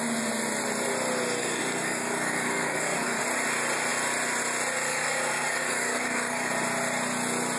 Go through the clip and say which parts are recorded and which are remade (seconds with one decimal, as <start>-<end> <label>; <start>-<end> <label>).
0.0-1.4 recorded; 1.4-3.2 remade; 3.2-4.9 recorded; 4.9-6.5 remade; 6.5-7.6 recorded